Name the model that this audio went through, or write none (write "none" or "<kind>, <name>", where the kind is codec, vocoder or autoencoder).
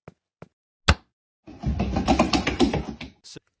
none